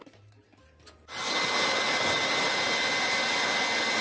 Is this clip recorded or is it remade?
recorded